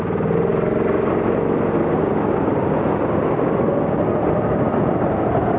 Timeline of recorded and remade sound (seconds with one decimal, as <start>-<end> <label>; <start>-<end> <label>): 0.0-5.6 recorded